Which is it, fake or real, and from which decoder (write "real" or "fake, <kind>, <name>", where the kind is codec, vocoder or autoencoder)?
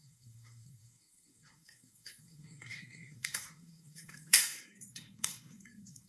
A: fake, codec, SNAC